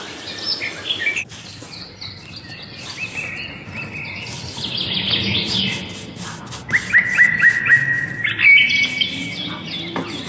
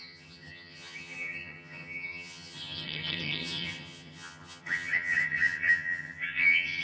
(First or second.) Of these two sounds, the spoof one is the second